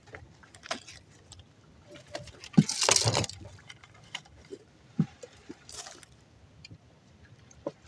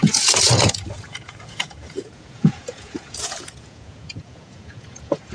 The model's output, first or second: second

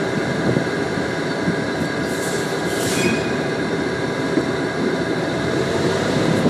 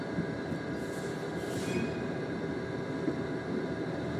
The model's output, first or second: first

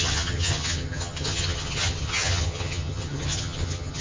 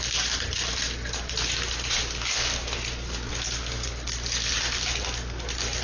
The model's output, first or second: first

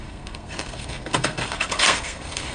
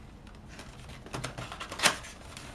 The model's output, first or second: first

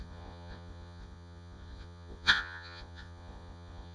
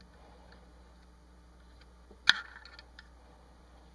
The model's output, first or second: first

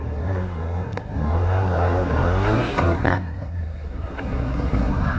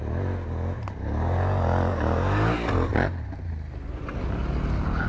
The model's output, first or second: first